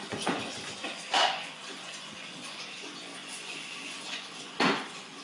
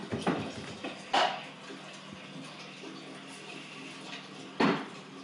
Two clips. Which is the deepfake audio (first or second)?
first